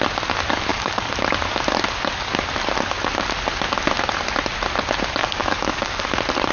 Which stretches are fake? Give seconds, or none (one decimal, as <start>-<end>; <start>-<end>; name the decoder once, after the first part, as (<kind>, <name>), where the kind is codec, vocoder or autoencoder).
0.7-1.2 (codec, DAC); 5.2-6.0